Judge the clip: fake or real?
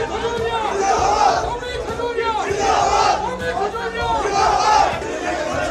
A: real